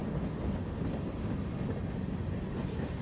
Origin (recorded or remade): recorded